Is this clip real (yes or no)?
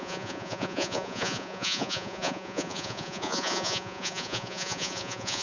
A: no